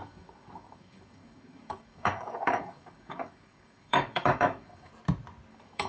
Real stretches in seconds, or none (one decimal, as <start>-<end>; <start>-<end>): 4.9-5.5